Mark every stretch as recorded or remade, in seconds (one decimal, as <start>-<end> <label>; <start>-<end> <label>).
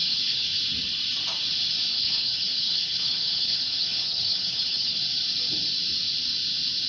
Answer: 0.0-0.6 remade; 0.6-1.9 recorded; 1.9-5.0 remade; 5.0-6.9 recorded